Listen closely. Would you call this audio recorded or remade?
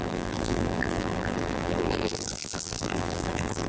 remade